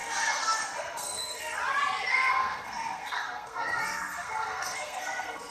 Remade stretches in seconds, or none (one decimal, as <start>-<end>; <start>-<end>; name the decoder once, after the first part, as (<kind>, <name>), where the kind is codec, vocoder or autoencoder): 0.0-1.6 (codec, SNAC); 2.1-5.5